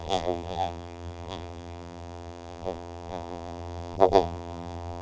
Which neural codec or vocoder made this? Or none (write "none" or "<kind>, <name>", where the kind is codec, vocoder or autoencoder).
vocoder, BigVGAN v2